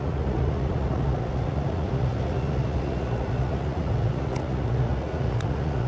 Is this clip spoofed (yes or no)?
yes